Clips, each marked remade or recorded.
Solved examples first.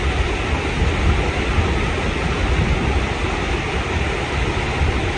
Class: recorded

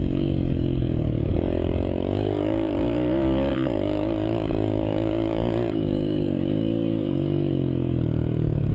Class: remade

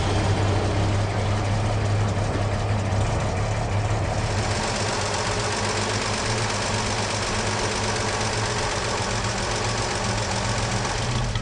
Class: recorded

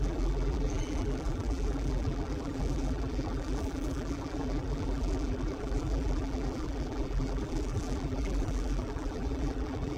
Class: remade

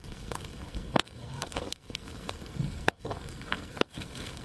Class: remade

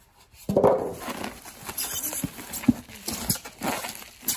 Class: recorded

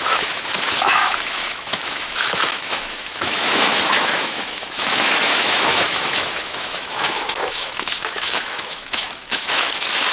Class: remade